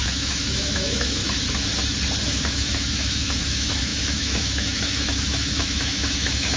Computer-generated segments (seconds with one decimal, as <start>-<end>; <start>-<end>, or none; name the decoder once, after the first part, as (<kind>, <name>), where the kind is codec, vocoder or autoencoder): 0.0-1.2 (autoencoder, DAC-VAE); 2.2-6.6